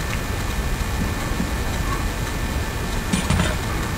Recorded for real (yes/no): yes